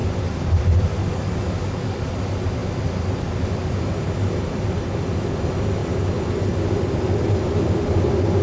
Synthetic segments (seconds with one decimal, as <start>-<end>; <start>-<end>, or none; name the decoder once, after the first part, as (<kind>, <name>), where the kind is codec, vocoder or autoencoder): 1.0-2.0 (codec, DAC)